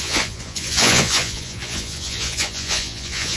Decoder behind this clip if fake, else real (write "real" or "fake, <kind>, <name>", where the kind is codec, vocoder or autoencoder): fake, vocoder, Vocos